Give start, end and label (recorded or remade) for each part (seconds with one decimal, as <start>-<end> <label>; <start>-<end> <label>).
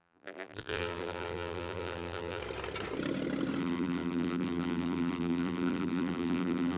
0.0-2.4 remade; 2.4-3.6 recorded; 3.6-6.8 remade